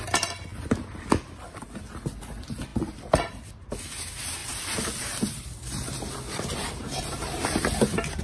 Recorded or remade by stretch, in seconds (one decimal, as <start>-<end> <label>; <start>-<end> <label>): 0.0-4.4 recorded; 4.4-8.2 remade

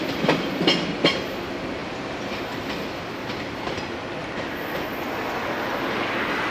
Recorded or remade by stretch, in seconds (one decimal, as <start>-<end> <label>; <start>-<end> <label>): 0.0-6.5 recorded

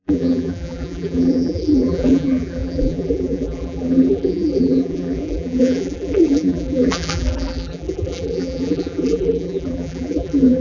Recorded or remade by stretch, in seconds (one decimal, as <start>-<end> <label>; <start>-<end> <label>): 0.0-10.6 remade

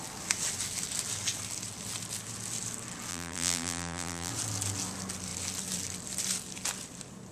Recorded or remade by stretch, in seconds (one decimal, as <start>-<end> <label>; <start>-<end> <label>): 0.0-3.1 recorded; 3.1-4.3 remade; 4.3-7.3 recorded